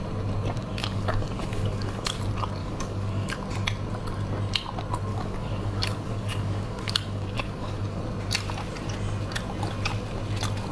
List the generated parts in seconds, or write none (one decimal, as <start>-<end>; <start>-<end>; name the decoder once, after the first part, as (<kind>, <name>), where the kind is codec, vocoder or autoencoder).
0.8-2.2 (codec, DAC); 2.6-3.3; 5.1-8.0